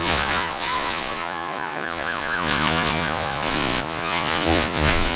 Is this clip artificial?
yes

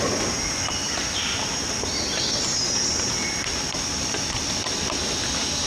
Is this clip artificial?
no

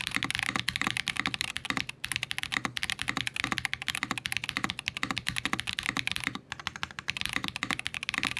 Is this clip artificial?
no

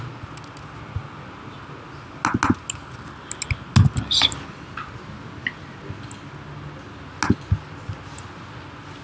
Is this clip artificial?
no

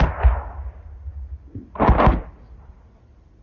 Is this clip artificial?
no